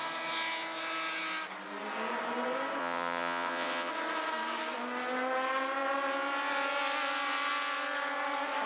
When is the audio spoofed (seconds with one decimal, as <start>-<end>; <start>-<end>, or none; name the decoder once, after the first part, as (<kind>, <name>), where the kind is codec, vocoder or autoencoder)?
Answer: 2.8-3.9 (vocoder, WaveNeXt)